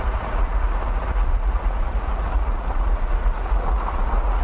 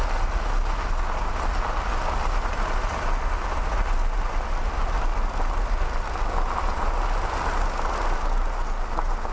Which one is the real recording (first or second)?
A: second